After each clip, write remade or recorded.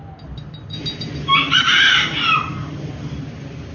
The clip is recorded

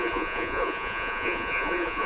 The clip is remade